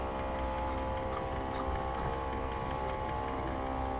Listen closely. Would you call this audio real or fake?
real